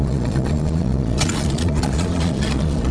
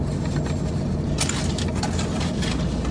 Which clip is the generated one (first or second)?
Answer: first